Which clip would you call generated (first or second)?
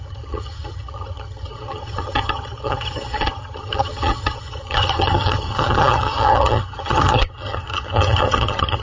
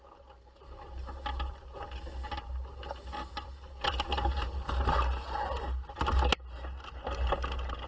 first